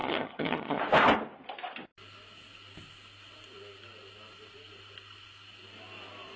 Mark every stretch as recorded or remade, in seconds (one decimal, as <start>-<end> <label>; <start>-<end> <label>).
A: 0.0-0.8 remade; 0.8-6.4 recorded